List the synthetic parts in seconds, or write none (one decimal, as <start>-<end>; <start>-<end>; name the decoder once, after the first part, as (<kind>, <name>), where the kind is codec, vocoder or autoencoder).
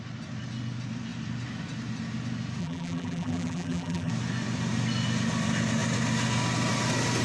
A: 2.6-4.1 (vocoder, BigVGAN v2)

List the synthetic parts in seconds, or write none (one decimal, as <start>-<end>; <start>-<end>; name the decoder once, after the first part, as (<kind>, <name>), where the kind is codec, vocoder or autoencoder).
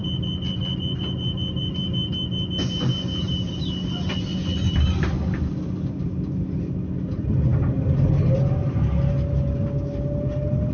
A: 3.2-6.6 (vocoder, BigVGAN v2)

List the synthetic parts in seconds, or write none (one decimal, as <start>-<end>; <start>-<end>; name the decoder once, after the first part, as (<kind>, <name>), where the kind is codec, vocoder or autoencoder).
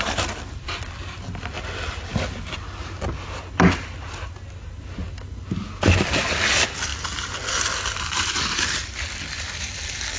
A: 0.0-2.1 (vocoder, BigVGAN v2); 5.9-10.2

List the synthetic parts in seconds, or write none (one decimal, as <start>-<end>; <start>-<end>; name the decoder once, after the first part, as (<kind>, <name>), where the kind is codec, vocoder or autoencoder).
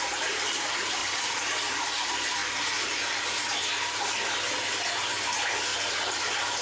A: 1.0-1.8 (vocoder, BigVGAN v2); 5.7-6.6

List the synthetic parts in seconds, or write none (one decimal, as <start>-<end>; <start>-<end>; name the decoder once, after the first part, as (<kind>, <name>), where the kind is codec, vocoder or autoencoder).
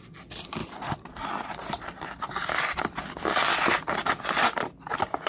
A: 0.6-1.3 (vocoder, BigVGAN v2)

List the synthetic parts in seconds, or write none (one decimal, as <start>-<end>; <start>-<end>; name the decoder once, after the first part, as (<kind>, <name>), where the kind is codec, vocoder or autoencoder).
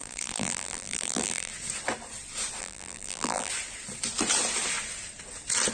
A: 0.0-1.5 (vocoder, BigVGAN v2); 2.6-3.5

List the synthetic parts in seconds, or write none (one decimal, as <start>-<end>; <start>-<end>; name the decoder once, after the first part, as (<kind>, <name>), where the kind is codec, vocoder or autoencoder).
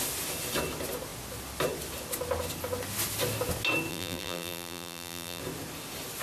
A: 3.9-5.4 (vocoder, BigVGAN v2)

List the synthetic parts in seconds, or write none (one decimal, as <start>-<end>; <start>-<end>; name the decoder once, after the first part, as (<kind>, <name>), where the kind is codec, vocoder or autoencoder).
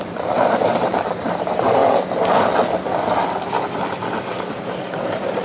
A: 0.0-1.8 (vocoder, BigVGAN v2); 5.0-5.4